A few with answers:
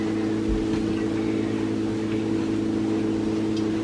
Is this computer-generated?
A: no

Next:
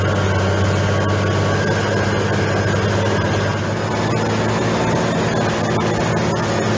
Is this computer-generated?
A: no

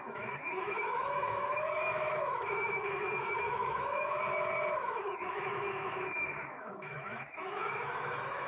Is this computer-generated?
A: yes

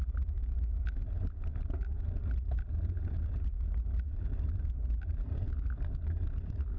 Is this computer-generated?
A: no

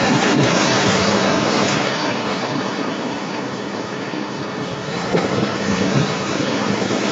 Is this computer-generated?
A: yes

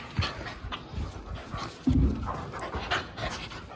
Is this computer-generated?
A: no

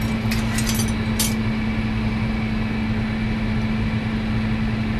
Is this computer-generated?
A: no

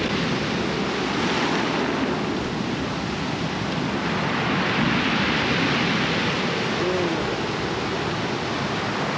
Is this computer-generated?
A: no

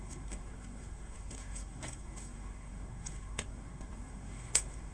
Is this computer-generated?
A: yes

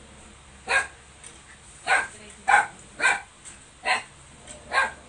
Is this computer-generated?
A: no